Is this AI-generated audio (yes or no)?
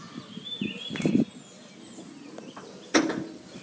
no